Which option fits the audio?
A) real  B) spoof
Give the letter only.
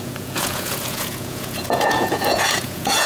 B